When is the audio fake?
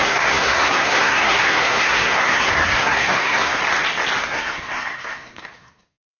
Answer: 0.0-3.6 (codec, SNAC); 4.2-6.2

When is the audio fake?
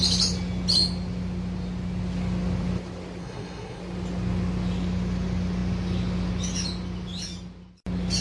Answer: 3.2-3.8 (codec, SNAC)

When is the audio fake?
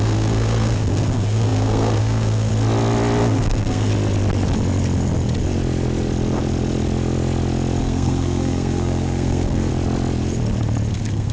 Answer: 0.0-2.5 (codec, SNAC); 3.2-3.9; 7.8-9.7; 10.9-11.3